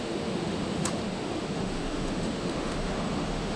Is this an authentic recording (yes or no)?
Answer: no